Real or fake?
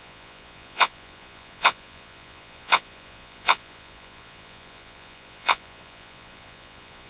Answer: fake